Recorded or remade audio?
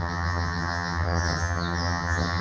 remade